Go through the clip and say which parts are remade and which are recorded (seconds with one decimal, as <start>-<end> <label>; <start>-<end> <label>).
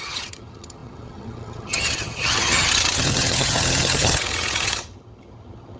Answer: 0.0-5.8 remade